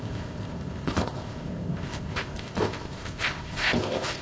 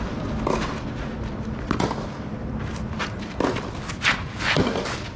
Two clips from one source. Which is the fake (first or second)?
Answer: first